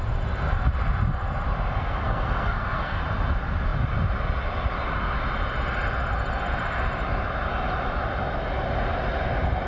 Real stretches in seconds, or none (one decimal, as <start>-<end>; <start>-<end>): 0.0-1.8; 3.0-9.7